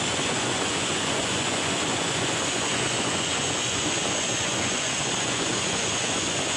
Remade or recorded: remade